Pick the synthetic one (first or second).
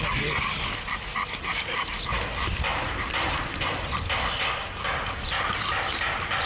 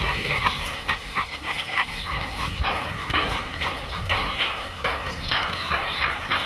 second